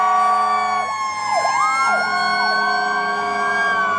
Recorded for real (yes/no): yes